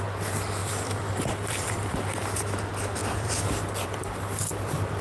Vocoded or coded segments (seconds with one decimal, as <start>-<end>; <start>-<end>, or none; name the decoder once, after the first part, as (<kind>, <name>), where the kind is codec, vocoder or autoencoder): 0.6-1.9 (vocoder, BigVGAN v2); 3.0-5.0